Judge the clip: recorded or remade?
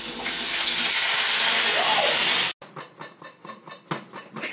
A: recorded